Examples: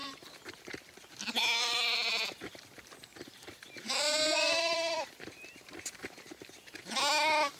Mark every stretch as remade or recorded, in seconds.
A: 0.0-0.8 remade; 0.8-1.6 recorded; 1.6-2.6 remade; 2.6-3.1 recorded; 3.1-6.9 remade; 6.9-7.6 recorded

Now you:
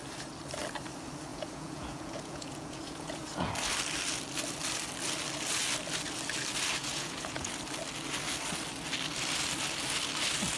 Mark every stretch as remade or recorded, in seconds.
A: 0.0-1.3 recorded; 1.3-3.5 remade; 3.5-6.8 recorded; 6.8-7.5 remade; 7.5-10.6 recorded

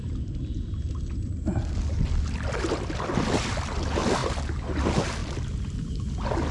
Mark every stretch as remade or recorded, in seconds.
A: 0.0-6.5 recorded

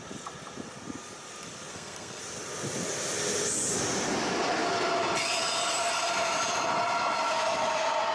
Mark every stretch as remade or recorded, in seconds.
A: 0.0-1.7 recorded; 1.7-2.2 remade; 2.2-8.1 recorded